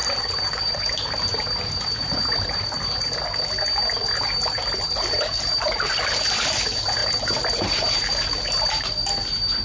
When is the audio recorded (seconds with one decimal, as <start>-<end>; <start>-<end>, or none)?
3.0-4.0; 5.6-7.0; 8.0-9.6